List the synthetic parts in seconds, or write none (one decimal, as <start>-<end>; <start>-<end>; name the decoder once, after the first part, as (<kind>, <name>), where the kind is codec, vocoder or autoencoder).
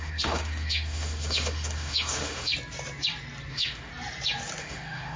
0.0-2.5 (autoencoder, DAC-VAE); 3.5-3.9; 4.6-5.2